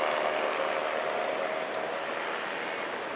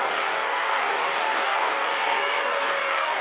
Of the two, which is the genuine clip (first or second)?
first